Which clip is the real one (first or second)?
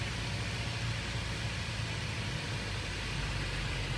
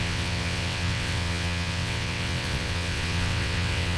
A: first